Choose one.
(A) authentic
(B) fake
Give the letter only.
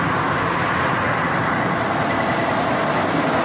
A